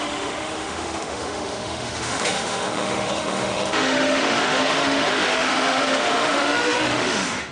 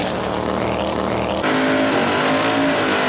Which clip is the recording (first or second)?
second